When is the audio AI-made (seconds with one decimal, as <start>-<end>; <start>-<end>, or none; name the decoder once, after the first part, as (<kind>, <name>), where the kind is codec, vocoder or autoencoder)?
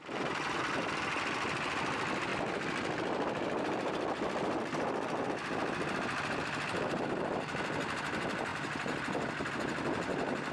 2.3-7.0 (vocoder, BigVGAN v2)